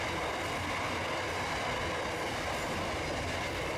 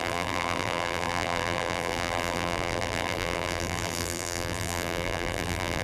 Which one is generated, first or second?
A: second